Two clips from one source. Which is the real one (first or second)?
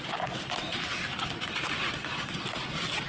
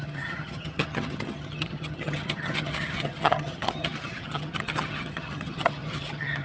first